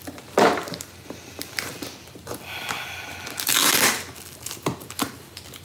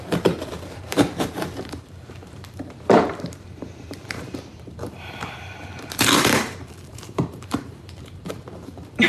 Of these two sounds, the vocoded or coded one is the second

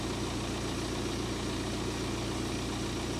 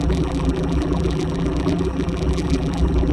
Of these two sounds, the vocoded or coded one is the second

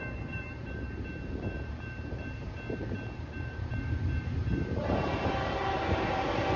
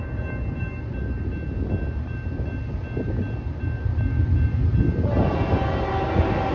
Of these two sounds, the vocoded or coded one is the first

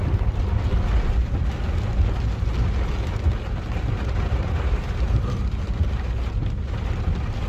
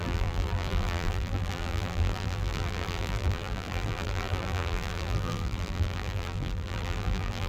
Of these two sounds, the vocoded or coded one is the second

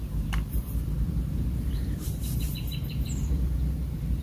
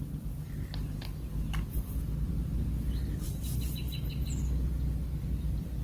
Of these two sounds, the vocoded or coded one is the first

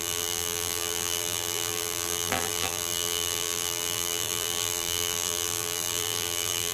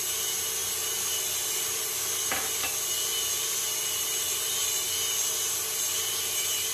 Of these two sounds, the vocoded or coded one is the first